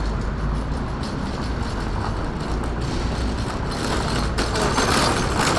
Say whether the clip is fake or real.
real